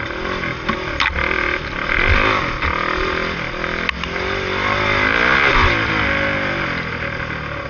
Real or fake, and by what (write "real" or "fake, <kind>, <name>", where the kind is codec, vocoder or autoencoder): real